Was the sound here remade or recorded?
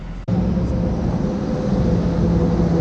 recorded